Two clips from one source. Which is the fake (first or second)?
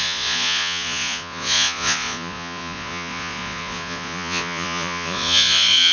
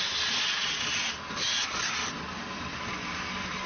first